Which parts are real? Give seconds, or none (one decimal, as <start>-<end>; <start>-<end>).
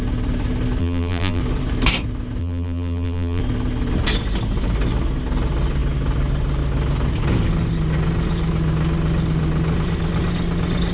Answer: 0.0-0.8; 1.4-2.4; 3.4-10.9